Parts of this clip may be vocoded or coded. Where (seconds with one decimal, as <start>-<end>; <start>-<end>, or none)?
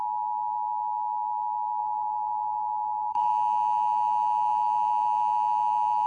1.8-3.3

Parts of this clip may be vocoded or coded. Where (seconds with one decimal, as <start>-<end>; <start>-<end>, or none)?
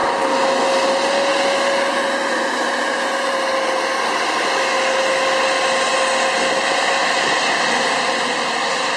none